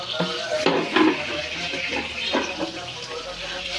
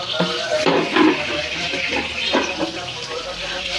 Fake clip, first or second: second